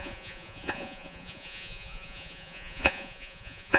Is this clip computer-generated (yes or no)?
yes